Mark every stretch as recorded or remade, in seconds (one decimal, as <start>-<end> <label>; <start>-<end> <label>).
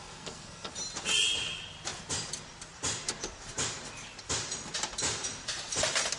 0.0-0.7 remade; 0.7-6.2 recorded